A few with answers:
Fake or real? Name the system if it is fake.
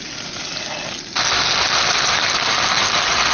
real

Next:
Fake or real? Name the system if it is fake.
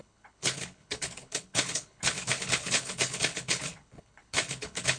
fake, codec, HILCodec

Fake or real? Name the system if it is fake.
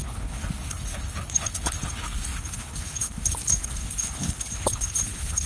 fake, codec, HILCodec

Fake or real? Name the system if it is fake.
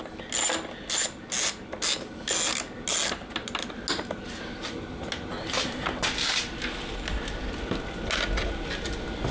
real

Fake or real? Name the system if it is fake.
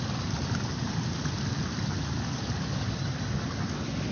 real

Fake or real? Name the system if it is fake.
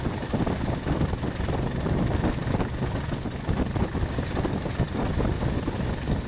real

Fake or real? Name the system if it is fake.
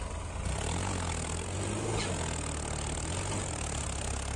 real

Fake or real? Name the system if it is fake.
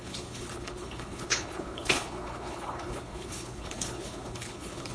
fake, codec, HILCodec